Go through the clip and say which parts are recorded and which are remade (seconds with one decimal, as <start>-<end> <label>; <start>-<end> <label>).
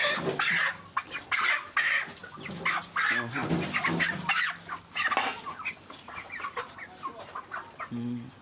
0.0-8.4 recorded